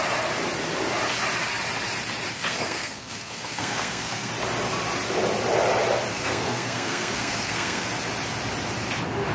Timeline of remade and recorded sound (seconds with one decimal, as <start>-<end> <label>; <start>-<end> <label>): 0.0-2.3 recorded; 2.3-4.3 remade; 4.3-6.1 recorded; 6.1-7.9 remade; 7.9-9.3 recorded